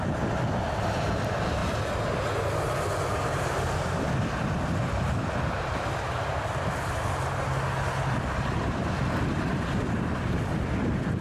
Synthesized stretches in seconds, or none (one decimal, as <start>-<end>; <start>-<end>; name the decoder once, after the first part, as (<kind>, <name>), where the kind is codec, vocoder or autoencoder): none